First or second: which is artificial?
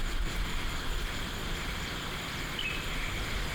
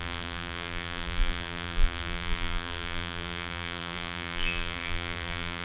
second